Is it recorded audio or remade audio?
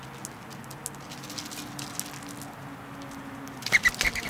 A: recorded